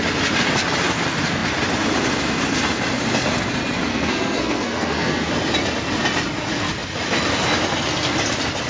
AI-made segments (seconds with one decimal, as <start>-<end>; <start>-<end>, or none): 3.9-5.3